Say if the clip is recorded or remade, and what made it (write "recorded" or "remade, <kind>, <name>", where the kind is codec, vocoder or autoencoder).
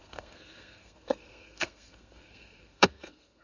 remade, codec, SNAC